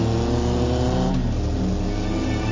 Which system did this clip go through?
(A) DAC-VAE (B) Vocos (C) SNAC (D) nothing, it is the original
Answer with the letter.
D